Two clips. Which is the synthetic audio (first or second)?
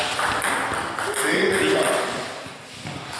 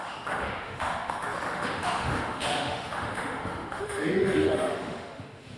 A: second